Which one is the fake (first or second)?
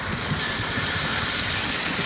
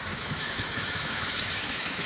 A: second